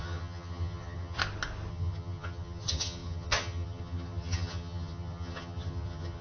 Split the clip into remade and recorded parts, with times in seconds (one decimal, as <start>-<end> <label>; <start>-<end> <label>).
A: 0.0-1.2 remade; 1.2-1.7 recorded; 1.7-6.2 remade